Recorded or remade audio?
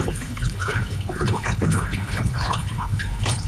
remade